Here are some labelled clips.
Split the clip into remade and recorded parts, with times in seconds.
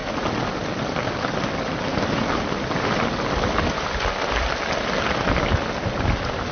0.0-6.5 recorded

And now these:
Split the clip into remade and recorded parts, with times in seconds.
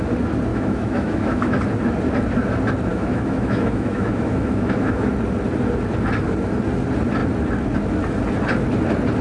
0.0-0.5 recorded; 0.5-1.6 remade; 1.6-2.9 recorded; 2.9-5.1 remade; 5.1-9.2 recorded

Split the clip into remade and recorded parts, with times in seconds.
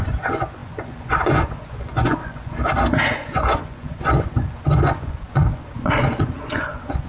0.0-2.6 remade; 2.6-3.1 recorded; 3.1-7.1 remade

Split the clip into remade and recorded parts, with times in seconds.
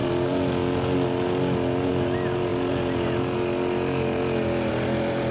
0.0-5.3 recorded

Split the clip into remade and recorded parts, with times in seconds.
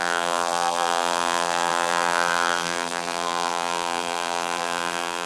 0.0-5.3 remade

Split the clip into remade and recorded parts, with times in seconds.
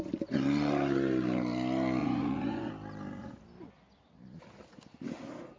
0.0-2.0 recorded; 2.0-2.7 remade; 2.7-5.6 recorded